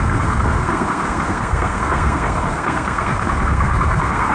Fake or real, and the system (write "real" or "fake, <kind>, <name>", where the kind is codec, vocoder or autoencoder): fake, codec, SNAC